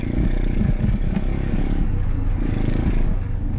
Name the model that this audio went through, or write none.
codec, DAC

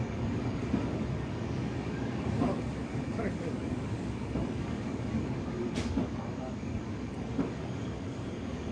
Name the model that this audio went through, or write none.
codec, DAC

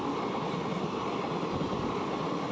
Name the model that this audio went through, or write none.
none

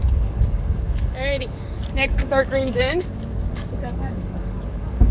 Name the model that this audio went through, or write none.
codec, DAC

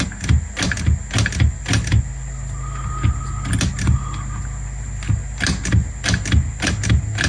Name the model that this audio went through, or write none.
none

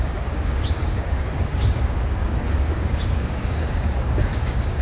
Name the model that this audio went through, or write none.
codec, DAC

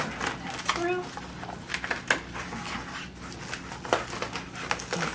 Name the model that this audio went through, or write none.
none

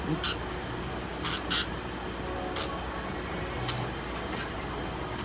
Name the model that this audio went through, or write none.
none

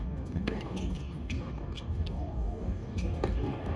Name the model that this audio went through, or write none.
codec, DAC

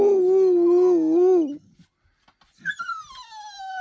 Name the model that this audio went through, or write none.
none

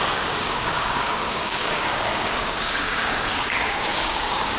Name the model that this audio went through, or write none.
codec, DAC